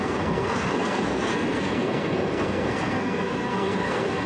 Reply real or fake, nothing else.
fake